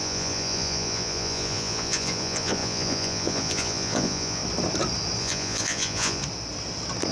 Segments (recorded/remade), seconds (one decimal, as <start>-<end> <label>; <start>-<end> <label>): 0.0-4.4 remade; 4.4-5.2 recorded; 5.2-6.2 remade; 6.2-7.1 recorded